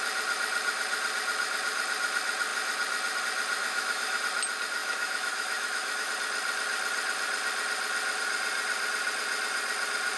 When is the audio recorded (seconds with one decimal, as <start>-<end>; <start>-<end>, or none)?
0.0-3.6; 4.2-4.8; 6.1-10.2